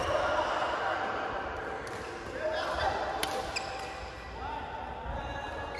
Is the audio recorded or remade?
recorded